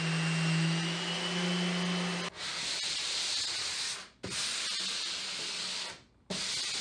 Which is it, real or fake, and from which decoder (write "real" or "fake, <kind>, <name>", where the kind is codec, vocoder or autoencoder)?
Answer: real